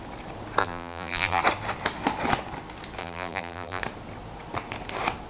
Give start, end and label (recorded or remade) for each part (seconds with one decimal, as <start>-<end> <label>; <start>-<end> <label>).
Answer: 0.0-0.6 recorded; 0.6-1.4 remade; 1.4-3.0 recorded; 3.0-3.8 remade; 3.8-5.3 recorded